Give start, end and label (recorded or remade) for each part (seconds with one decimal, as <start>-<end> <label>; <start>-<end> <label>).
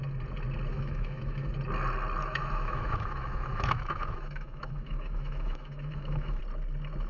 0.0-0.7 recorded; 0.7-1.5 remade; 1.5-2.2 recorded; 2.2-6.4 remade; 6.4-7.1 recorded